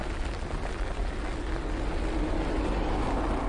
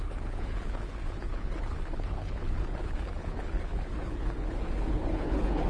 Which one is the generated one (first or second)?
second